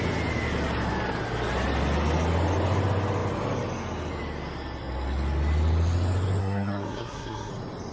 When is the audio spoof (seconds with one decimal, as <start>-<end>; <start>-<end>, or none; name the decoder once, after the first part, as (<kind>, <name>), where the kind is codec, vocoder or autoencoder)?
6.4-7.5 (codec, SNAC)